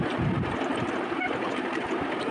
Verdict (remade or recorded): remade